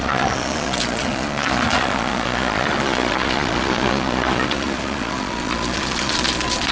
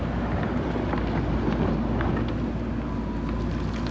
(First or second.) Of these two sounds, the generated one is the first